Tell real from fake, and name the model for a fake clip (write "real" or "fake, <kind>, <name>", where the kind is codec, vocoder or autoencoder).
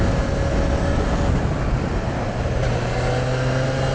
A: real